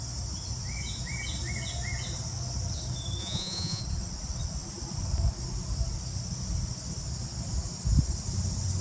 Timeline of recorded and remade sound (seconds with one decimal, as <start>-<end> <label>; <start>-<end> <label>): 0.0-3.2 recorded; 3.2-3.8 remade; 3.8-8.8 recorded

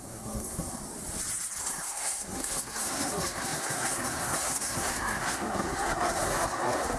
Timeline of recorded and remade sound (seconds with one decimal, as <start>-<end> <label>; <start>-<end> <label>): 0.0-0.8 remade; 0.8-1.6 recorded; 1.6-7.0 remade

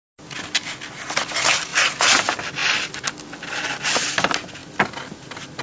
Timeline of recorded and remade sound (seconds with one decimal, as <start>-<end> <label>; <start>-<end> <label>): 0.0-5.6 recorded

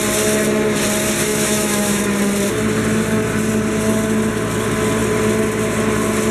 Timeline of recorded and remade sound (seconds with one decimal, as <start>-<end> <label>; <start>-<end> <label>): 0.0-1.3 recorded; 1.3-2.0 remade; 2.0-6.3 recorded

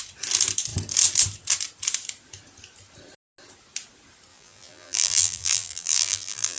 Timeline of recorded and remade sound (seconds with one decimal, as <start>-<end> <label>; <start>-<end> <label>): 0.0-4.3 recorded; 4.3-6.6 remade